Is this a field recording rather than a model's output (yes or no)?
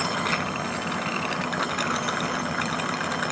yes